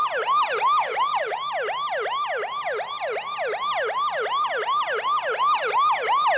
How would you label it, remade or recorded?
recorded